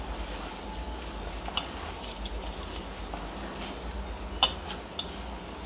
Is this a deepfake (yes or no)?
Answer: no